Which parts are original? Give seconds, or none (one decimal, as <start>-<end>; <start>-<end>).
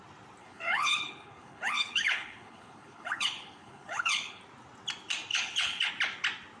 0.0-0.4; 4.4-5.3; 5.9-6.6